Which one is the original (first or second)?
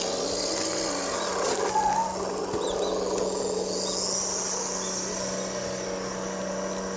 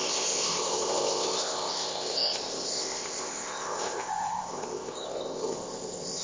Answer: first